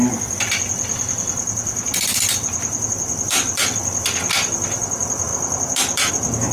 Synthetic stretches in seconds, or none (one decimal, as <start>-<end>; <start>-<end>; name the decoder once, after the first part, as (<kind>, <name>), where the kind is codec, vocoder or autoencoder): 2.9-5.3 (vocoder, BigVGAN v2); 6.1-6.5